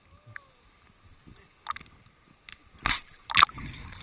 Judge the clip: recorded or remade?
recorded